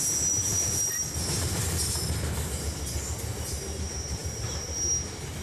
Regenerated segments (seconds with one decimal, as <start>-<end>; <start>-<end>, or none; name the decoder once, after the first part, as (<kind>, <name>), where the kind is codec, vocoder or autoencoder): none